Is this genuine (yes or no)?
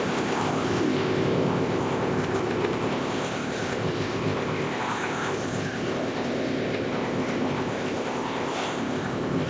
no